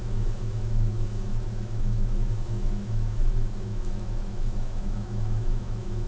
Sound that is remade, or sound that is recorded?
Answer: remade